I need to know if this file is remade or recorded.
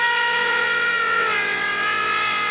remade